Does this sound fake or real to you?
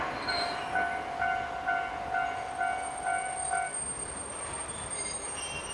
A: real